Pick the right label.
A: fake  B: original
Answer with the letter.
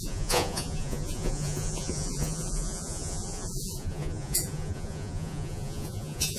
A